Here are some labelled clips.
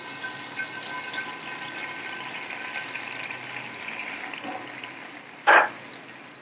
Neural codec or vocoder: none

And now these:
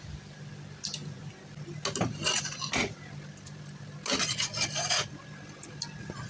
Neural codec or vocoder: none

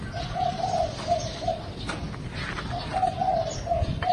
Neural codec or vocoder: none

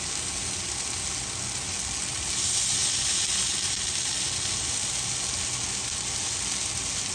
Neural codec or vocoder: none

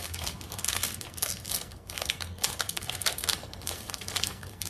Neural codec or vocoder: codec, SNAC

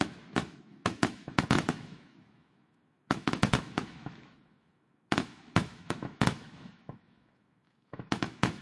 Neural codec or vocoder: autoencoder, DAC-VAE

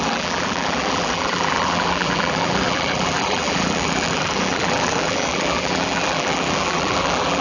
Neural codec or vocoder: vocoder, BigVGAN v2